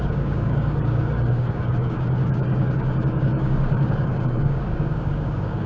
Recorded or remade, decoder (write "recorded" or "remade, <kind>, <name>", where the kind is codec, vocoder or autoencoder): remade, codec, DAC